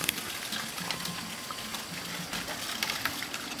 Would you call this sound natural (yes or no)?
yes